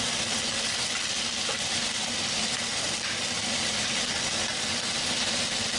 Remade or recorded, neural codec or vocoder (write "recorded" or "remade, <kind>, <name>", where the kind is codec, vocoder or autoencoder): recorded